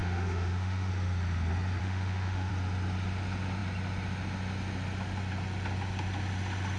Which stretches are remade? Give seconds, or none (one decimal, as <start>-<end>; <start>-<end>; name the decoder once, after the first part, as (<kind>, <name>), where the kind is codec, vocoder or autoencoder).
0.0-0.9 (autoencoder, DAC-VAE); 1.8-2.5